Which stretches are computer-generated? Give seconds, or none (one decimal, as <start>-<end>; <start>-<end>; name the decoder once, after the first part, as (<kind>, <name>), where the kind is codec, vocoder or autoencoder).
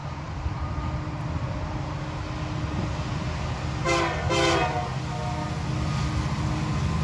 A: 0.0-0.7 (vocoder, BigVGAN v2)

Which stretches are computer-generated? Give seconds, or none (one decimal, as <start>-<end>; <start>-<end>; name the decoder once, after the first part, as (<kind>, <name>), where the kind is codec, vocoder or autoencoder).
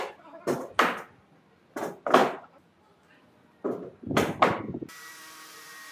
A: 5.1-5.9 (vocoder, BigVGAN v2)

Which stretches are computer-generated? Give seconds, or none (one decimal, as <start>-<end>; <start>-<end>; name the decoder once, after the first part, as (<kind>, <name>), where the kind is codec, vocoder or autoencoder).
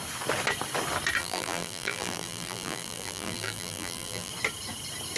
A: 1.2-4.3 (vocoder, BigVGAN v2)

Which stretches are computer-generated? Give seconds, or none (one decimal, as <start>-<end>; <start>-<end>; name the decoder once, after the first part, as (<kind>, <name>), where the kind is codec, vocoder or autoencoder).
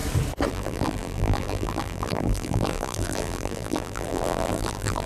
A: 0.5-5.1 (vocoder, BigVGAN v2)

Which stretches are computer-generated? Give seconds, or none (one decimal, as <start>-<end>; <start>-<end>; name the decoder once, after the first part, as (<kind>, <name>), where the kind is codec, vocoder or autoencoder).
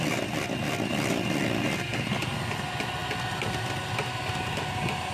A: none